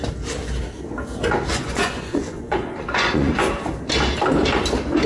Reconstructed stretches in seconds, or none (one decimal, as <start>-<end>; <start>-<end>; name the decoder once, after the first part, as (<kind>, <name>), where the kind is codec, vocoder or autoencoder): 1.5-3.5 (vocoder, Vocos)